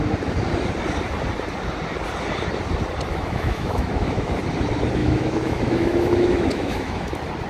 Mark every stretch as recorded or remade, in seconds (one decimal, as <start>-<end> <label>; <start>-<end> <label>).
0.0-3.1 recorded; 3.1-4.3 remade; 4.3-5.0 recorded; 5.0-7.1 remade; 7.1-7.5 recorded